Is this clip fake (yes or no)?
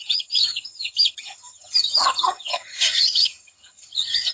yes